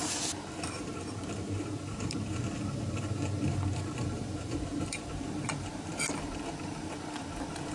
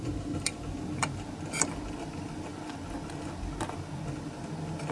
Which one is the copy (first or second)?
first